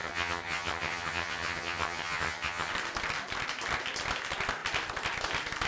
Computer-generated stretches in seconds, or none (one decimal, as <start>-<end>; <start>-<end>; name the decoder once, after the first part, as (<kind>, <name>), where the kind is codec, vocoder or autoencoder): 0.0-2.7 (vocoder, HiFi-GAN)